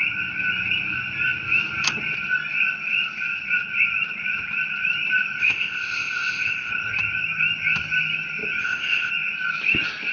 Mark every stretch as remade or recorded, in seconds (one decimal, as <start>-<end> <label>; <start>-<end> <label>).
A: 0.0-5.4 recorded; 5.4-6.7 remade; 6.7-8.6 recorded; 8.6-9.1 remade; 9.1-10.1 recorded